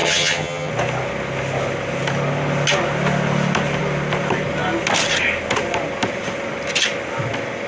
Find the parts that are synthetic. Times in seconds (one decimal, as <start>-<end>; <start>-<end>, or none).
0.0-0.7